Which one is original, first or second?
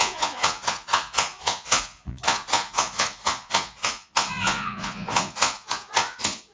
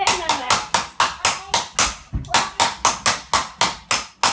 second